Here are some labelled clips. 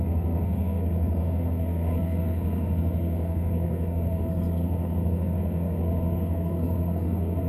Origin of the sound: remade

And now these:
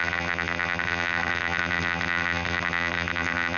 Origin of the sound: remade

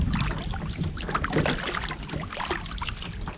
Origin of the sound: recorded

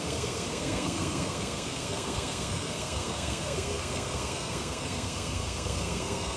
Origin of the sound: remade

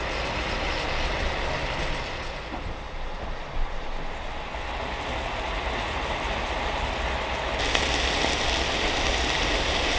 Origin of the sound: recorded